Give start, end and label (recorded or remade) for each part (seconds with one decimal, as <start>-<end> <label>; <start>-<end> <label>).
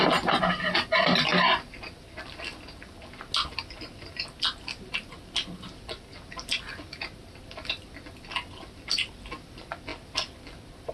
0.0-10.9 recorded